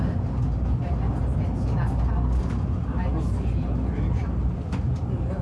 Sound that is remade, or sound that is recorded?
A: recorded